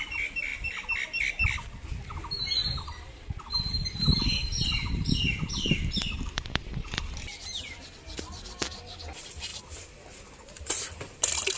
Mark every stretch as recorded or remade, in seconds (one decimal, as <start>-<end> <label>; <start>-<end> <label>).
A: 0.0-0.5 remade; 0.5-2.8 recorded; 2.8-9.5 remade; 9.5-10.6 recorded; 10.6-11.6 remade